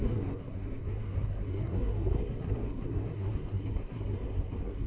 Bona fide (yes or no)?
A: no